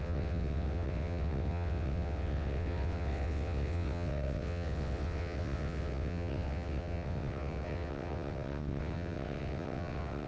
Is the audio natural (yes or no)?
no